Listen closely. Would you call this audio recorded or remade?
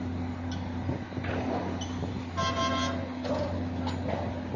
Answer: recorded